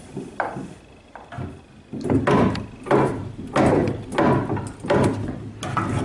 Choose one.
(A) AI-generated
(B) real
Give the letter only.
B